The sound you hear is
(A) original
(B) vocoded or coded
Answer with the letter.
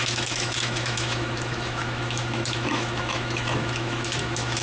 B